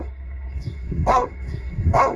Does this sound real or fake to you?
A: fake